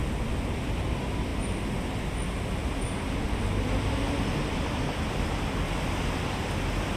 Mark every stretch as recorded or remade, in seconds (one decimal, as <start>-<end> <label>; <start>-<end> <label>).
0.0-7.0 recorded

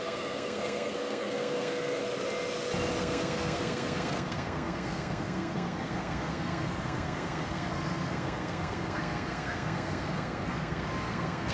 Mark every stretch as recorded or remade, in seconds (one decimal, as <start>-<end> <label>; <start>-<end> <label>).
0.0-2.0 remade; 2.0-3.0 recorded; 3.0-11.5 remade

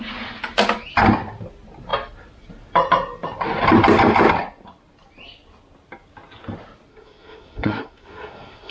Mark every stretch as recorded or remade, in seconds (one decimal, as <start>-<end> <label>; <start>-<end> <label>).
0.0-6.9 recorded; 6.9-8.7 remade